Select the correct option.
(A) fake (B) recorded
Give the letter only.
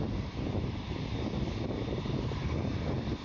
B